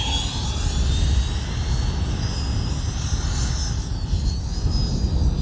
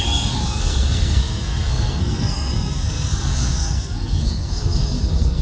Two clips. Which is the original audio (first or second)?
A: first